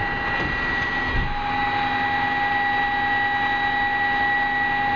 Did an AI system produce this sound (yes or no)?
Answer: no